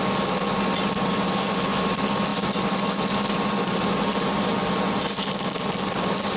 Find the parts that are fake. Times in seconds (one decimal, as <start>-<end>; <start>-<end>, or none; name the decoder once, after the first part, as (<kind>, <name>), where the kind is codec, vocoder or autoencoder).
none